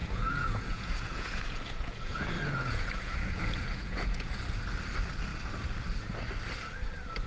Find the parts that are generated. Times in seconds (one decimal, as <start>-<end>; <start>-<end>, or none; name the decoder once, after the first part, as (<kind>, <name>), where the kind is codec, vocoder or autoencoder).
0.0-4.4 (vocoder, Vocos)